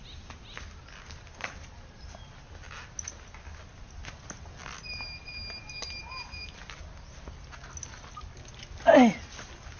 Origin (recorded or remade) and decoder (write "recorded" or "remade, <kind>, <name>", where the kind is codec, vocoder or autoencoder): recorded